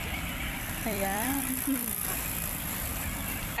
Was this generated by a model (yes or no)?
yes